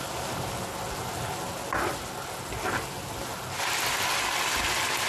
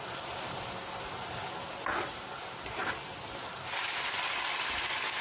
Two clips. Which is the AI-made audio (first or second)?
second